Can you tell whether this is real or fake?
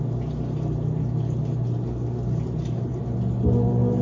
real